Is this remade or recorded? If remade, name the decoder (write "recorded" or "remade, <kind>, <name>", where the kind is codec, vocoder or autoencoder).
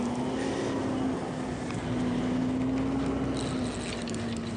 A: recorded